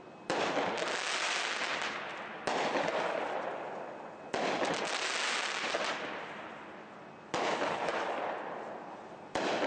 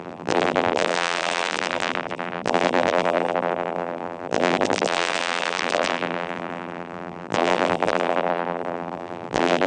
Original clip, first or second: first